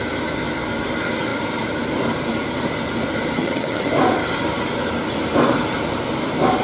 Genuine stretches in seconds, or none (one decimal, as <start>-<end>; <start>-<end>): 0.0-3.4; 3.9-6.6

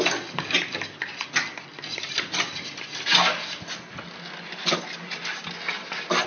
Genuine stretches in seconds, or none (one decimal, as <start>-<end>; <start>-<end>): 0.0-6.3

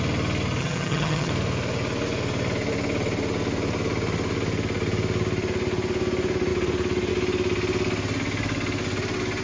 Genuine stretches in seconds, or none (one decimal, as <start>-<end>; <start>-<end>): 0.0-0.6; 1.3-9.4

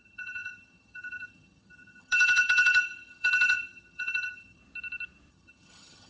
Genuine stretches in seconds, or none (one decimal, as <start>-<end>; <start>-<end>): 4.6-5.3

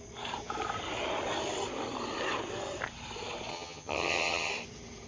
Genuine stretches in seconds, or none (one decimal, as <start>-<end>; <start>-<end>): 0.0-3.5; 4.5-5.1

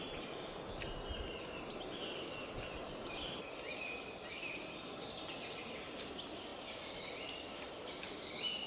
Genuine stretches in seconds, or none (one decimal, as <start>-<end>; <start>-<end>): 0.0-8.7